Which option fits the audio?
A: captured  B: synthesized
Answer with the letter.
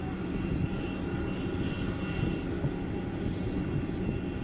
A